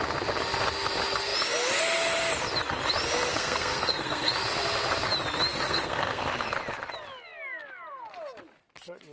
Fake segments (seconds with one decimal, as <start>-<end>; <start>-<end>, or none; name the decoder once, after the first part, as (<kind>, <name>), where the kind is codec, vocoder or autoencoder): 3.3-4.3 (codec, SNAC); 5.5-6.2